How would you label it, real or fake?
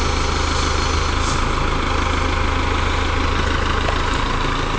real